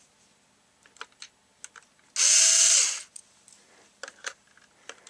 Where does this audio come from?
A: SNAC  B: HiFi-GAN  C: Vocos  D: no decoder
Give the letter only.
D